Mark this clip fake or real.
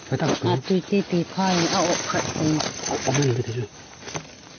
real